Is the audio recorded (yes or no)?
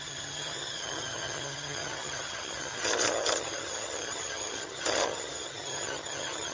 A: no